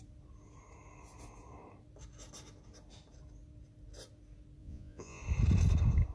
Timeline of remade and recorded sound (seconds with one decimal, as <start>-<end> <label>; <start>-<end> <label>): 0.0-4.6 recorded; 4.6-5.2 remade; 5.2-6.1 recorded